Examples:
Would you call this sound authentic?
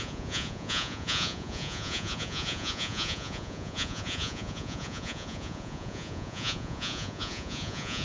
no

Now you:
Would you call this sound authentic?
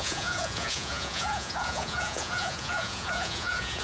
no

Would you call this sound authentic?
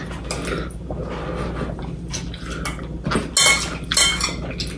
yes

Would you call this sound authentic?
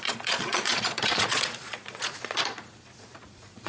no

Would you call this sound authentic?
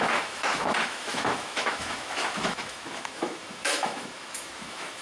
no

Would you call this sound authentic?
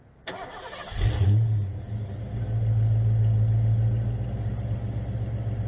yes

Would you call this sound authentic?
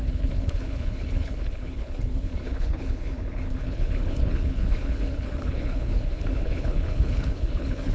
no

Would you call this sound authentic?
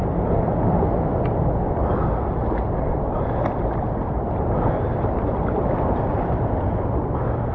yes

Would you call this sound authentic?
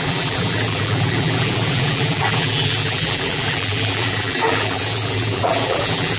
no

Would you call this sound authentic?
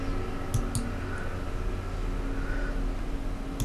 yes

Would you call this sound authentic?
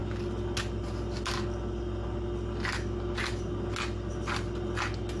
yes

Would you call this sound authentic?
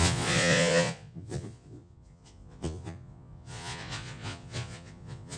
no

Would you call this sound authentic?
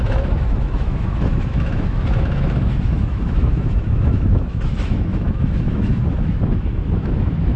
no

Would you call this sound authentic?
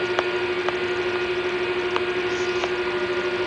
yes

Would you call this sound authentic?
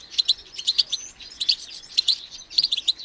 no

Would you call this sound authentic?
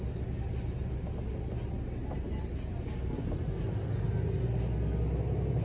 yes